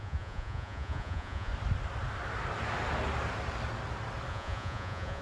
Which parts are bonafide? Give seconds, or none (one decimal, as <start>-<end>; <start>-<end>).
1.5-4.3